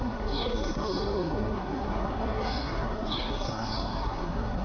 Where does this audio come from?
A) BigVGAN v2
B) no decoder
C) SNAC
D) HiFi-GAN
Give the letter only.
C